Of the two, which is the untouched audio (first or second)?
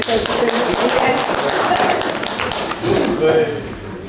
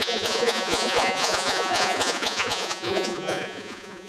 first